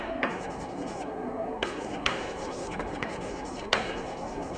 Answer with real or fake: fake